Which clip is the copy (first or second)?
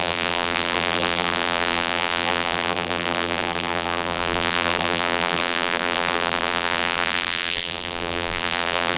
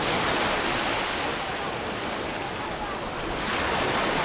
first